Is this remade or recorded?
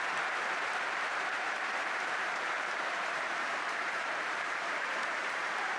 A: remade